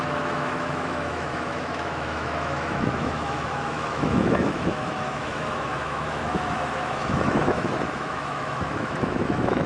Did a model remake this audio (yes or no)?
yes